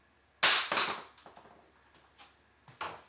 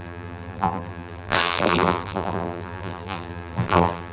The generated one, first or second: second